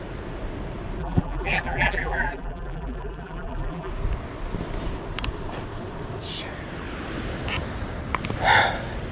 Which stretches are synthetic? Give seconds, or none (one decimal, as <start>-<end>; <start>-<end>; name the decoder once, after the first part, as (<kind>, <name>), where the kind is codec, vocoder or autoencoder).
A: 1.0-3.9 (vocoder, BigVGAN v2)